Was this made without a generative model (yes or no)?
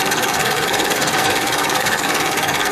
no